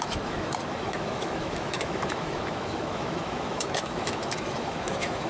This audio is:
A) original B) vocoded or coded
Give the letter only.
B